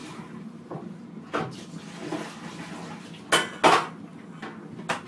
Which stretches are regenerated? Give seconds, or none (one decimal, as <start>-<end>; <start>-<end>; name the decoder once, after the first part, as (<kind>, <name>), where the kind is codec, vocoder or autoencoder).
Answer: none